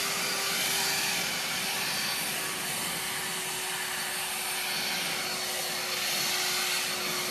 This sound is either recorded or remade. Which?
recorded